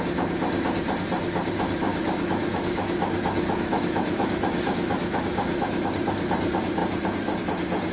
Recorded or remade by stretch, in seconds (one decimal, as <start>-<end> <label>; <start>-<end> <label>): 0.0-1.9 recorded; 1.9-5.9 remade; 5.9-7.9 recorded